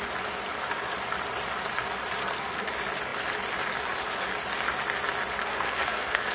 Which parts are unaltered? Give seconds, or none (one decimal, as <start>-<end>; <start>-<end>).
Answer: 0.0-2.2; 2.7-5.4